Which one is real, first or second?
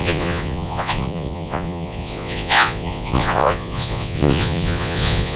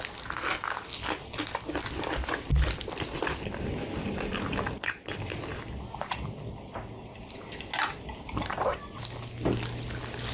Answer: second